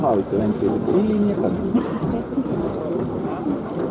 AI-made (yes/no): no